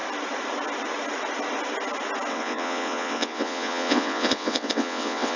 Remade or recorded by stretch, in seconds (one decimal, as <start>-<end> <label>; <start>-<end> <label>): 0.0-2.3 recorded; 2.3-5.4 remade